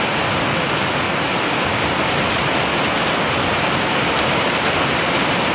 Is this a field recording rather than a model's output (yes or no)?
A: yes